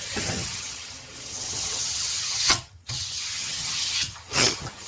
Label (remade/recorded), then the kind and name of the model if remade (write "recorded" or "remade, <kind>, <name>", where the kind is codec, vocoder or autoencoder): remade, vocoder, HiFi-GAN